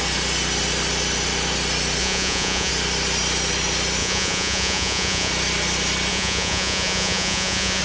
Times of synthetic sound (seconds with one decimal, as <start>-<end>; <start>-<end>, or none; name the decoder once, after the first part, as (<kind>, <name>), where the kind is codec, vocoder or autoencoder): 2.0-2.7 (vocoder, Vocos); 4.0-5.3; 6.1-7.8